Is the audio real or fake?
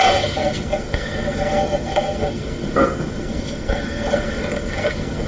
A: fake